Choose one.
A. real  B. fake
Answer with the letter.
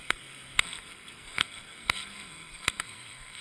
B